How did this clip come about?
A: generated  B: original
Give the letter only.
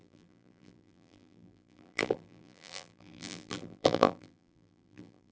A